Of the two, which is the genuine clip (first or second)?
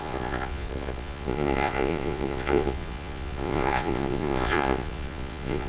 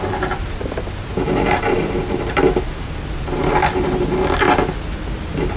second